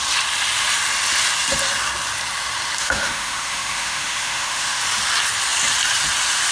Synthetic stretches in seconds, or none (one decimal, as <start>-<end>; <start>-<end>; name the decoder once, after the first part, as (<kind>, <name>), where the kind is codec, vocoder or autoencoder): 2.8-4.8 (autoencoder, DAC-VAE)